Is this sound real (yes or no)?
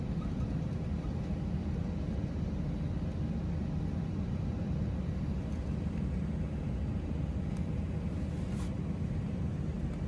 yes